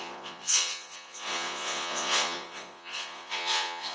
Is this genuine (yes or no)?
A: no